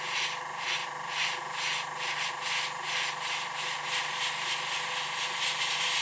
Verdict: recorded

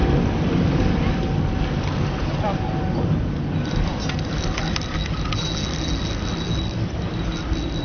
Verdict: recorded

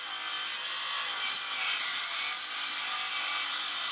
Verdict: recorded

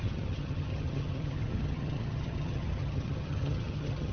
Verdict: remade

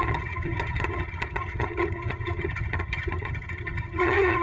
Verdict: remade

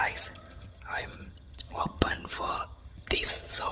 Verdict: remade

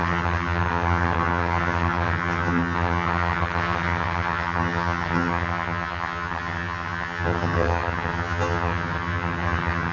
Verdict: remade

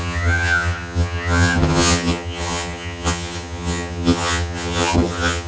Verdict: remade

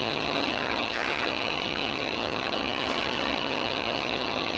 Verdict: remade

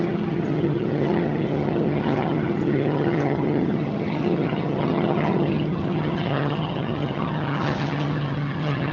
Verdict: remade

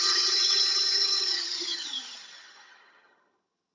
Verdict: remade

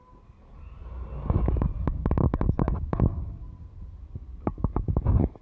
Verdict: recorded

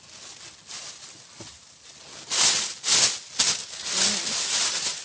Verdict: recorded